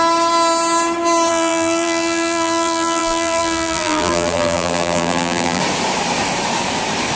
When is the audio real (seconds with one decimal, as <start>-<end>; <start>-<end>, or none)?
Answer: 0.0-1.3; 5.6-7.2